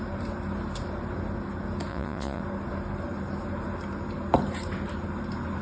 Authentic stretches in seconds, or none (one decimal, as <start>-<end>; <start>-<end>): 0.0-1.9; 2.4-5.6